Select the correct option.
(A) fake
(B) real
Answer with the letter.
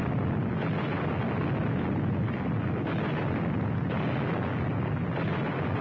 B